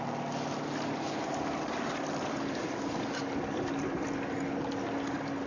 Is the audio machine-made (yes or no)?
no